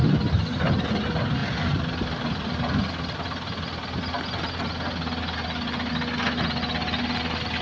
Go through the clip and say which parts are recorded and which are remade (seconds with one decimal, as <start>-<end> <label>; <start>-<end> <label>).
0.0-7.6 recorded